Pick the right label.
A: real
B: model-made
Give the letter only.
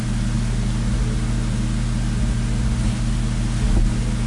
A